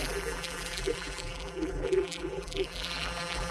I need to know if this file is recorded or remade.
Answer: remade